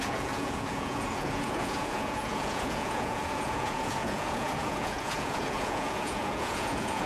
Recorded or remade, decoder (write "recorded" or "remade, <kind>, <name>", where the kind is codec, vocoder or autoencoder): remade, vocoder, Vocos